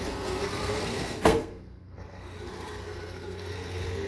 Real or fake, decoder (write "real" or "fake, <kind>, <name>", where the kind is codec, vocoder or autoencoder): fake, codec, SNAC